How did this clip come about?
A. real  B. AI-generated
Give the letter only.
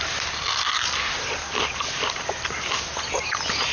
A